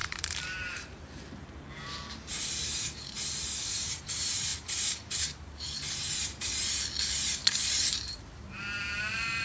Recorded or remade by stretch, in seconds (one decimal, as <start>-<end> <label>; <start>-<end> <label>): 0.0-6.5 remade; 6.5-7.9 recorded; 7.9-9.4 remade

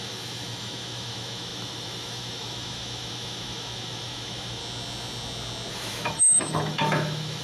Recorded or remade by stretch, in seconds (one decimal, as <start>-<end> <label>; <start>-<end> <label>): 0.0-4.6 remade; 4.6-5.7 recorded; 5.7-7.4 remade

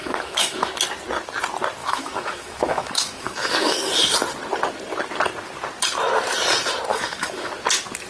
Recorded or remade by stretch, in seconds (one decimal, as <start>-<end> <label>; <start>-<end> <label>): 0.0-0.7 remade; 0.7-1.8 recorded; 1.8-3.9 remade; 3.9-6.9 recorded; 6.9-7.5 remade; 7.5-8.1 recorded

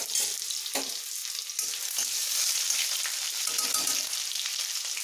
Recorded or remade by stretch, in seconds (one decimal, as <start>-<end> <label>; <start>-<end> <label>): 0.0-5.0 recorded

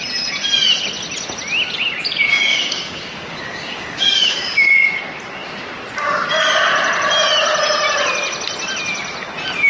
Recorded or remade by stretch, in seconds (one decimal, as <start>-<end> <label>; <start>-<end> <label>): 0.0-2.5 recorded; 2.5-4.7 remade; 4.7-9.7 recorded

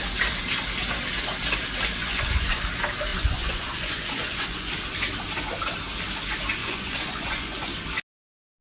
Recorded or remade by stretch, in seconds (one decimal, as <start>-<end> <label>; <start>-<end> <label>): 0.0-2.0 recorded; 2.0-2.6 remade; 2.6-3.1 recorded; 3.1-4.7 remade; 4.7-6.6 recorded; 6.6-7.7 remade; 7.7-8.6 recorded